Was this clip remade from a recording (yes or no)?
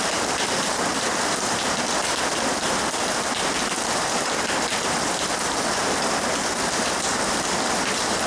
no